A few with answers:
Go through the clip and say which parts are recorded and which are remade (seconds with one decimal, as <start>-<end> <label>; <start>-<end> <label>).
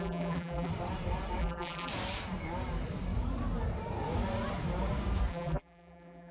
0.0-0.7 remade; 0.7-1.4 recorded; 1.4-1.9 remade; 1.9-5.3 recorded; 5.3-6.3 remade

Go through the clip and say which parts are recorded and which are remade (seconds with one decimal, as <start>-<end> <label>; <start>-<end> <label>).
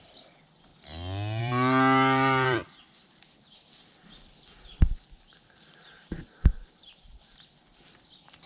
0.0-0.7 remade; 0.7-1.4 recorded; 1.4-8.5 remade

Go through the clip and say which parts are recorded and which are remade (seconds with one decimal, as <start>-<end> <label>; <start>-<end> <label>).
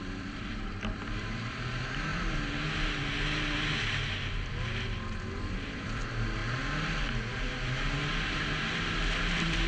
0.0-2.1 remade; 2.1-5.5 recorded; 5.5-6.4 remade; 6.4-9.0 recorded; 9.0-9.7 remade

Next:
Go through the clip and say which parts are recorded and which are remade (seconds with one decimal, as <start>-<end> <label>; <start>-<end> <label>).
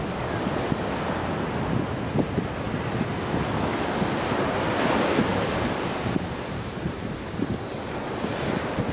0.0-5.3 recorded; 5.3-7.2 remade; 7.2-8.9 recorded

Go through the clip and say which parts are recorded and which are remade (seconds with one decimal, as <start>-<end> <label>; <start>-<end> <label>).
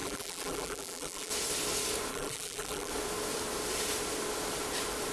0.0-1.3 remade; 1.3-2.1 recorded; 2.1-2.9 remade; 2.9-5.1 recorded